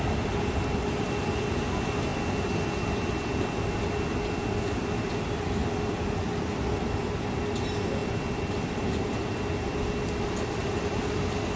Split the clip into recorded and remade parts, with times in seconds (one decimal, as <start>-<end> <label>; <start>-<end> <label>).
0.0-11.6 recorded